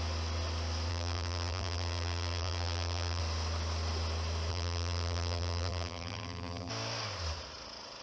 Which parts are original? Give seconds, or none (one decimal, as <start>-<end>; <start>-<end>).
0.0-0.9; 3.2-4.5; 6.7-8.0